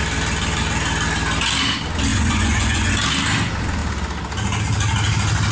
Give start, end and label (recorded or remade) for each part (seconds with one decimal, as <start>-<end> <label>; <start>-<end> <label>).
0.0-2.1 recorded; 2.1-2.9 remade; 2.9-5.5 recorded